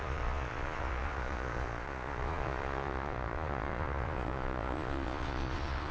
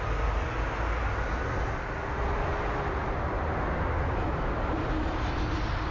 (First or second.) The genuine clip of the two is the second